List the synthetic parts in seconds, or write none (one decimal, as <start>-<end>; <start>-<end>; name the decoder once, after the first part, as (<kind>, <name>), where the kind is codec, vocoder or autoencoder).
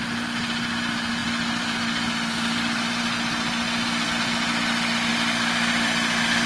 none